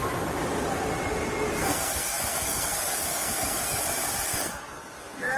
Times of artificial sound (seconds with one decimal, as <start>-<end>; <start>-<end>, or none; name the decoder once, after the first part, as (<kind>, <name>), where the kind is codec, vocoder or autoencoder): 1.6-3.8 (codec, SNAC); 4.3-5.4